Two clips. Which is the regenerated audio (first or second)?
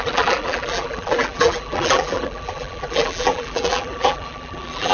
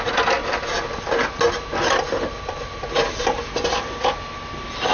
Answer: first